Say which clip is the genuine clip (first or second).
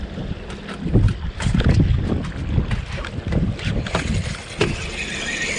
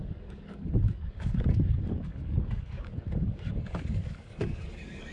first